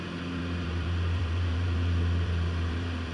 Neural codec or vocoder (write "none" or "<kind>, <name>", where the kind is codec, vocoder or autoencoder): vocoder, BigVGAN v2